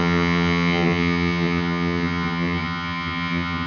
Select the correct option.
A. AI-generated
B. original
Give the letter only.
A